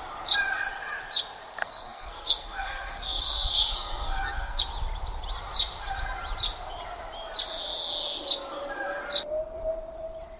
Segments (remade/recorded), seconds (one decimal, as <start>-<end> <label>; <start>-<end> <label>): 0.0-1.6 recorded; 1.6-4.6 remade; 4.6-10.4 recorded